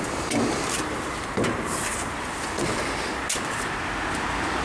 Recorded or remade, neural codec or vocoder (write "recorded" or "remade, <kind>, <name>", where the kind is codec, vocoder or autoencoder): recorded